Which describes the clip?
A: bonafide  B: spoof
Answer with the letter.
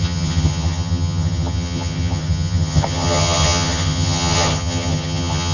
B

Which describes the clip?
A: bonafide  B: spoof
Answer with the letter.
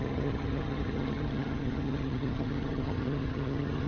B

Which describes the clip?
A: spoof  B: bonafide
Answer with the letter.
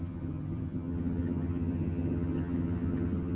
A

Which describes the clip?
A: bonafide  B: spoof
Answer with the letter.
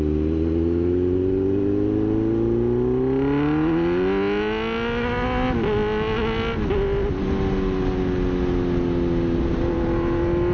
A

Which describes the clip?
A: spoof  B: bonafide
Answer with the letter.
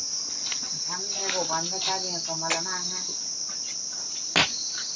B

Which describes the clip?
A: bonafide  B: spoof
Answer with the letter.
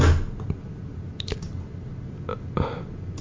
A